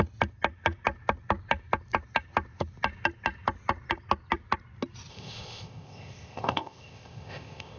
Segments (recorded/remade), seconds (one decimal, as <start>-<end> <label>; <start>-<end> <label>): 0.0-5.1 recorded; 5.1-7.8 remade